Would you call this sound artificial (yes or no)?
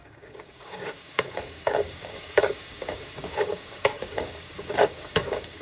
yes